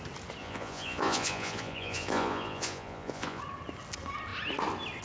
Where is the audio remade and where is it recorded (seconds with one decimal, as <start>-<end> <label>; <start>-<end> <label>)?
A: 0.0-0.4 recorded; 0.4-3.4 remade; 3.4-5.0 recorded